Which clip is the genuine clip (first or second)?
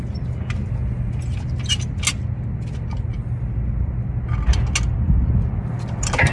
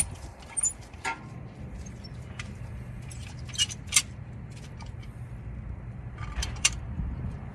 first